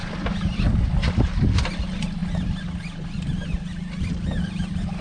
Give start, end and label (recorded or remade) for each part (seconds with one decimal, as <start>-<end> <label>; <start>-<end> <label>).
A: 0.0-5.0 recorded